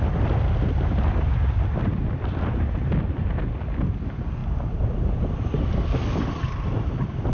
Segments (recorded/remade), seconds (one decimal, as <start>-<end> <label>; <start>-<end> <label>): 0.0-7.3 recorded